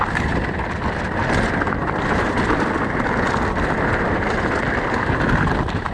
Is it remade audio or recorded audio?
recorded